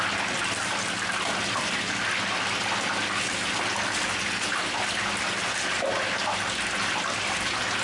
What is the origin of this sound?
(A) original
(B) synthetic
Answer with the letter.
A